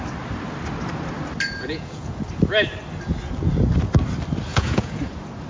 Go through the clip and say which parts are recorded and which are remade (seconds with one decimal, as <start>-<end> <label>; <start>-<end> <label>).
0.0-1.7 recorded; 1.7-2.2 remade; 2.2-4.5 recorded; 4.5-5.0 remade; 5.0-5.5 recorded